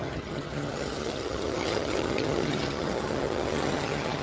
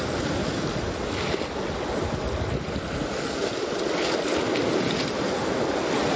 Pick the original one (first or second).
second